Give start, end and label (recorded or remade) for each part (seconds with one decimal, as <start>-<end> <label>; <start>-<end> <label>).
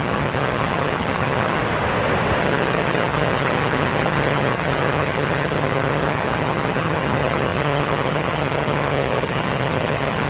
0.0-1.6 remade; 1.6-2.4 recorded; 2.4-10.3 remade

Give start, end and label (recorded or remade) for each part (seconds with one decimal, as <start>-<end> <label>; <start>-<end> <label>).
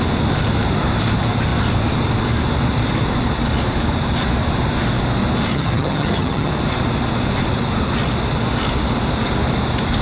0.0-5.5 recorded; 5.5-6.5 remade; 6.5-10.0 recorded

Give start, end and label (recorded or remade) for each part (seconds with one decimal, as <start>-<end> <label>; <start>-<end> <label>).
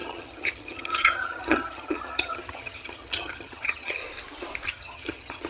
0.0-4.0 remade; 4.0-4.7 recorded; 4.7-5.5 remade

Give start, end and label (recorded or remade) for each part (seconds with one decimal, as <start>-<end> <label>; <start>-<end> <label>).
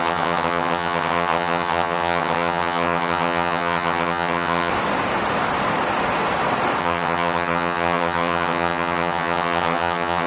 0.0-4.7 remade; 4.7-6.8 recorded; 6.8-10.3 remade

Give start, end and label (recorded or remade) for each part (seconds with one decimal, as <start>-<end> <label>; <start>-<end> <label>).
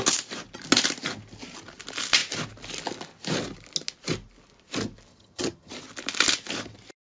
0.0-5.1 recorded; 5.1-5.7 remade; 5.7-7.0 recorded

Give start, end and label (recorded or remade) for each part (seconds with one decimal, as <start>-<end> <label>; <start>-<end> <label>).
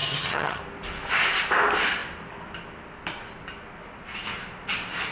0.0-0.6 remade; 0.6-5.1 recorded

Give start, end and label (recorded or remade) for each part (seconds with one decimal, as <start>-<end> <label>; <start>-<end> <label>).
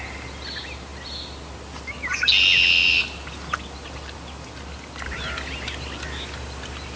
0.0-7.0 recorded